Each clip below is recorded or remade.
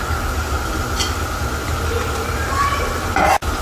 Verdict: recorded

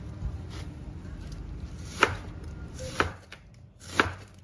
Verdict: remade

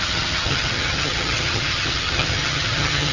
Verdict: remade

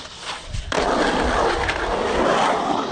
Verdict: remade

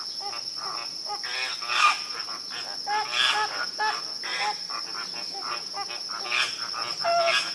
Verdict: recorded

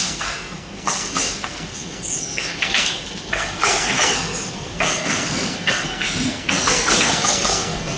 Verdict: remade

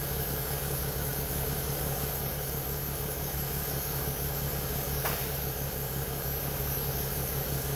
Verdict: remade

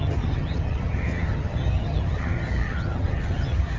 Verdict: remade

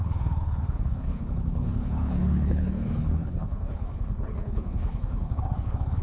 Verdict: remade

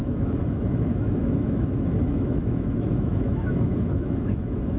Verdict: remade